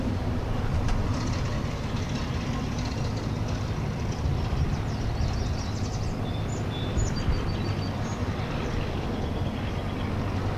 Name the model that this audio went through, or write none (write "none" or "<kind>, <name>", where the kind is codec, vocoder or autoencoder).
none